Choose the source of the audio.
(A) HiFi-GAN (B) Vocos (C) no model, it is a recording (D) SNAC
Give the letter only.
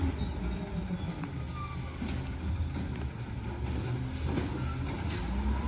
C